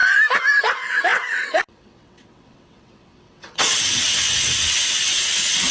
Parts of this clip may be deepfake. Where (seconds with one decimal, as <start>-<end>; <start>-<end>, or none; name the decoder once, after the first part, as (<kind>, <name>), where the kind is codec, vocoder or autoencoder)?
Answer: 0.6-5.7 (vocoder, WaveNeXt)